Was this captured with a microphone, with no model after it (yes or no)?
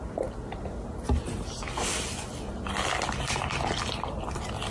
yes